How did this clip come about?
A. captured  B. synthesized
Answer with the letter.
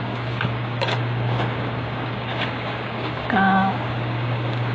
B